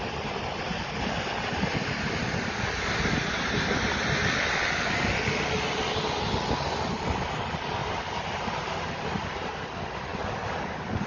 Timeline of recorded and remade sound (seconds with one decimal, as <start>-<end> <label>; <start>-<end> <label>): 0.0-10.1 recorded; 10.1-11.1 remade